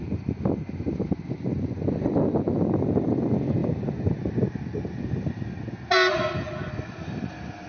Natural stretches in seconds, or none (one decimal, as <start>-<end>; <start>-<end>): 0.0-7.7